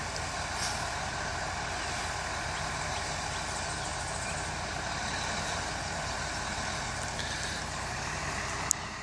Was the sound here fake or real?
real